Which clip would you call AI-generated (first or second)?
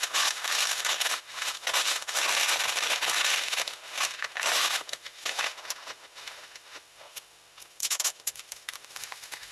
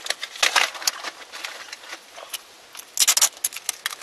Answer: first